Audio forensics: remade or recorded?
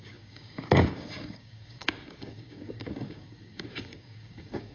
remade